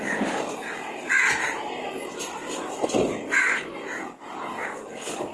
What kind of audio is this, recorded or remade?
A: recorded